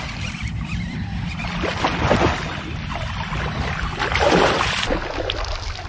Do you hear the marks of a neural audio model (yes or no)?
no